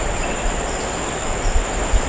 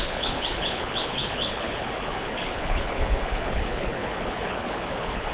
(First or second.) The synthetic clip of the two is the second